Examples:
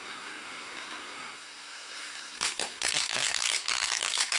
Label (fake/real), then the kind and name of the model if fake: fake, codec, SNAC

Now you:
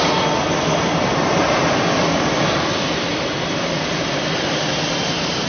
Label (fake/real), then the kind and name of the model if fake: real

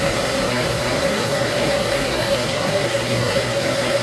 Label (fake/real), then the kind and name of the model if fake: fake, codec, SNAC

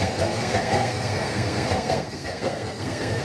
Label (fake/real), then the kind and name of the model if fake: fake, codec, SNAC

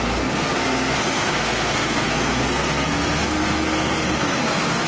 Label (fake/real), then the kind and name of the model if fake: fake, codec, SNAC